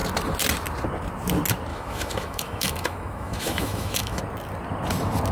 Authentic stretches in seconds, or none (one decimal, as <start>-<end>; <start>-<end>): 0.0-1.7; 4.2-5.3